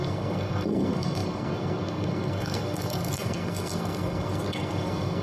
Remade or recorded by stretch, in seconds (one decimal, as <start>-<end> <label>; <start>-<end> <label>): 0.0-5.2 remade

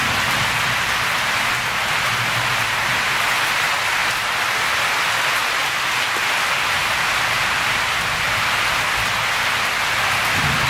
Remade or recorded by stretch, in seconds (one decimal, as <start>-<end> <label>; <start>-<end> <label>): 0.0-10.7 recorded

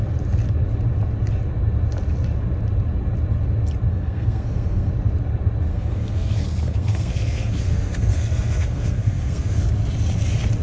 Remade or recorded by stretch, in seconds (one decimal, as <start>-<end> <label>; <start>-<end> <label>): 0.0-3.9 recorded; 3.9-4.9 remade; 4.9-5.7 recorded; 5.7-9.6 remade; 9.6-10.6 recorded

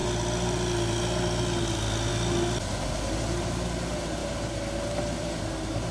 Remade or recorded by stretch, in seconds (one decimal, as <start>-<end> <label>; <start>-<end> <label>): 0.0-5.9 recorded